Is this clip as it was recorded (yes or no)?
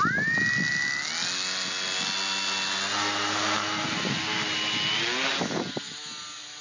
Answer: yes